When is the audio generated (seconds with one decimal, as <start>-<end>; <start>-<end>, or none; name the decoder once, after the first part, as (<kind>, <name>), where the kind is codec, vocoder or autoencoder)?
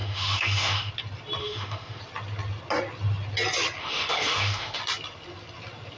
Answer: 0.0-0.9 (autoencoder, DAC-VAE); 1.4-2.0; 3.8-4.8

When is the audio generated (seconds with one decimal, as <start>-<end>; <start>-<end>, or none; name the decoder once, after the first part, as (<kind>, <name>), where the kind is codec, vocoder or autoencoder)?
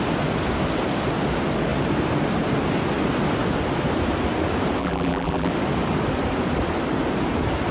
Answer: 4.8-5.5 (vocoder, BigVGAN v2)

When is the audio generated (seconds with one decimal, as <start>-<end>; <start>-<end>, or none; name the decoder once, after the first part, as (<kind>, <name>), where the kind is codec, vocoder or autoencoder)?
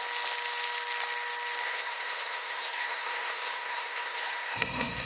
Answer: 1.6-5.1 (codec, SNAC)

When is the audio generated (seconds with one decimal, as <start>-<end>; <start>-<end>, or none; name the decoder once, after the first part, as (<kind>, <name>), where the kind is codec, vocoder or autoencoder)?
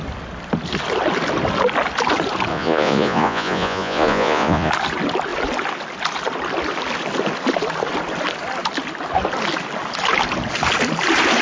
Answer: 2.5-4.7 (vocoder, Vocos)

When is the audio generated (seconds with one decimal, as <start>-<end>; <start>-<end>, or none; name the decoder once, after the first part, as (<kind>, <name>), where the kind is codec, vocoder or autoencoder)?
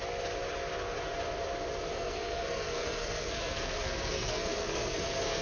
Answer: 1.9-5.4 (codec, SNAC)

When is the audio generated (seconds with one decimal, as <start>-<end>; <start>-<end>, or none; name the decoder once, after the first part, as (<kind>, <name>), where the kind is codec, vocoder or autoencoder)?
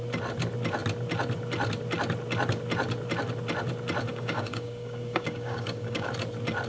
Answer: 4.1-6.1 (codec, DAC)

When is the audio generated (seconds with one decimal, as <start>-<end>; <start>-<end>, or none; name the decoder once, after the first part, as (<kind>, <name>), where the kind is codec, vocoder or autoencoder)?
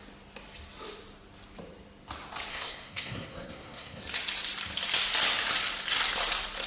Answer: 2.5-4.0 (codec, SNAC)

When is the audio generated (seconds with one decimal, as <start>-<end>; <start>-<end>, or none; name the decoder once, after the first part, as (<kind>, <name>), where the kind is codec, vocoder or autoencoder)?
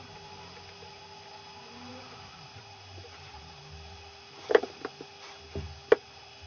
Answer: 1.9-3.6 (vocoder, BigVGAN v2)